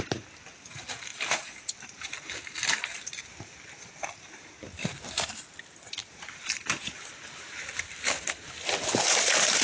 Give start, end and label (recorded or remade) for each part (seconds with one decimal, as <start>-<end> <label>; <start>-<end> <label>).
0.0-1.1 recorded; 1.1-2.1 remade; 2.1-4.8 recorded; 4.8-5.4 remade; 5.4-6.0 recorded; 6.0-7.1 remade; 7.1-9.6 recorded